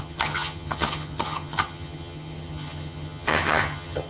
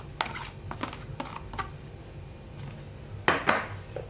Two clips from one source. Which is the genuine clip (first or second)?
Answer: second